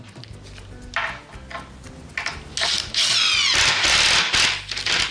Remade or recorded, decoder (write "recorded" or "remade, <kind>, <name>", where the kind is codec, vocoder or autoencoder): recorded